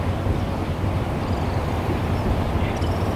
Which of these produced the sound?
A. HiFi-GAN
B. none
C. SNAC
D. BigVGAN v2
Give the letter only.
D